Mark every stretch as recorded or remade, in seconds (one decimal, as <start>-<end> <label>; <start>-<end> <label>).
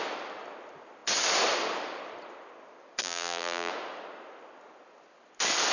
0.0-3.0 recorded; 3.0-3.7 remade; 3.7-5.7 recorded